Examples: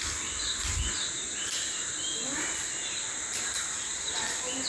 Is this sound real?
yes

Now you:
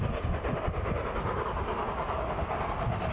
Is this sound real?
yes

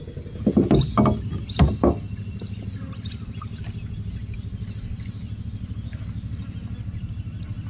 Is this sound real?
yes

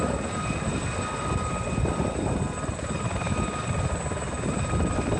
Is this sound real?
yes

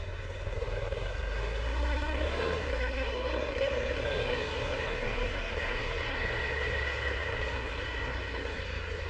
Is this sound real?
no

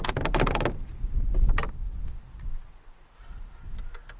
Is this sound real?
yes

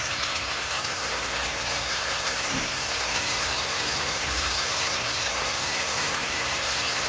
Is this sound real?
no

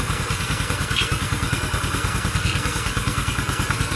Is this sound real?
no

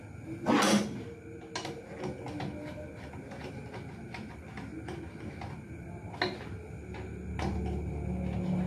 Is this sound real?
yes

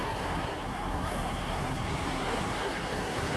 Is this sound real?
no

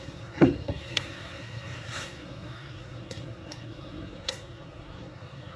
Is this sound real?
no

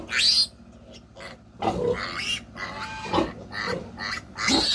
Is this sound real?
yes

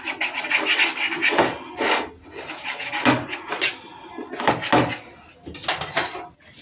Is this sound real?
yes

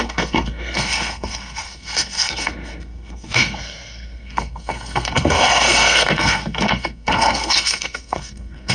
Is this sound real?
no